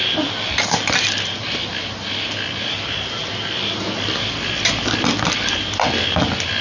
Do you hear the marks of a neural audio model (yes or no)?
no